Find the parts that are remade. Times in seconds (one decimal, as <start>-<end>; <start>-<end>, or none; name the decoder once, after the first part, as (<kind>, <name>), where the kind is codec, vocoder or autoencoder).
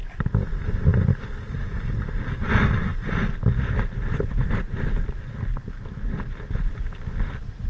none